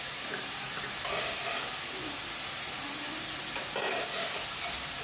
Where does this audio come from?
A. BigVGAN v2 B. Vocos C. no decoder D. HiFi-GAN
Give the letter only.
C